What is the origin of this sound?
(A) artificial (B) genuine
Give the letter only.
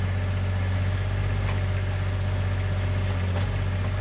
B